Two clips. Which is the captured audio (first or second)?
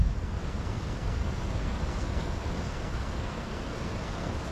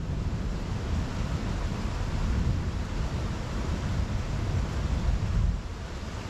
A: second